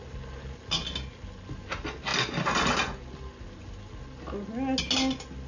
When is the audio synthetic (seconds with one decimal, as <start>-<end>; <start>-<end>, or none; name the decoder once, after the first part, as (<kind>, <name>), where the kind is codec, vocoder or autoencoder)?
none